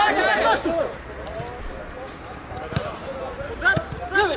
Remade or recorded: recorded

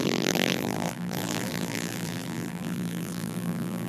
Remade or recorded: remade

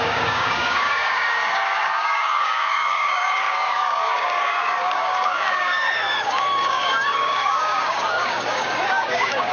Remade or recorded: remade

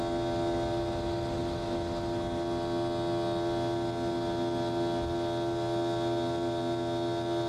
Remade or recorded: recorded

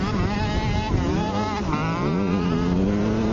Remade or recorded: recorded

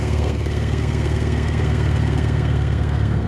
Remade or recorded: remade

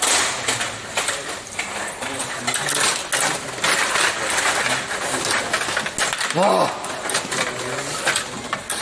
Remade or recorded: recorded